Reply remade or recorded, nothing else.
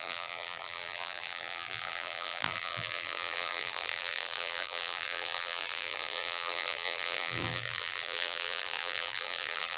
remade